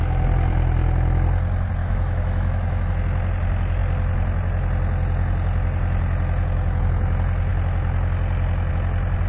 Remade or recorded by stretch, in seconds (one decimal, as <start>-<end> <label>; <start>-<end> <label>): 0.0-1.8 recorded; 1.8-2.9 remade; 2.9-9.3 recorded